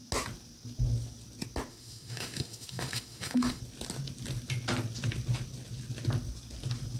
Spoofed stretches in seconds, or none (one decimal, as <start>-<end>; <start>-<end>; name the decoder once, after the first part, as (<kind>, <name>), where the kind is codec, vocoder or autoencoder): 1.7-3.6 (autoencoder, DAC-VAE)